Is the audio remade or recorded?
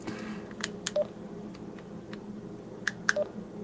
recorded